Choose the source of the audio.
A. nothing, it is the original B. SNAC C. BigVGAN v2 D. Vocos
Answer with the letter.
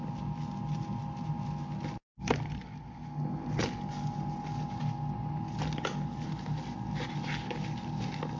A